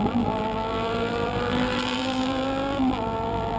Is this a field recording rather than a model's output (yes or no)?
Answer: no